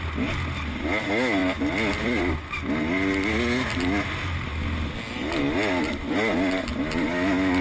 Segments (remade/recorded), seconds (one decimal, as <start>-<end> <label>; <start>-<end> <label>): 0.0-7.6 recorded